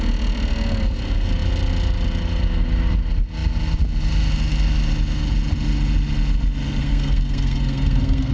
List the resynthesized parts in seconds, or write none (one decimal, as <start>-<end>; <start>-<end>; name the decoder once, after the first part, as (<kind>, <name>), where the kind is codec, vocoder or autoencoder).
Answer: 6.8-8.3 (codec, SNAC)